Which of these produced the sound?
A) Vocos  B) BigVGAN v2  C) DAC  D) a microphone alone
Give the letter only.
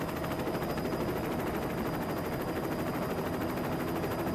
D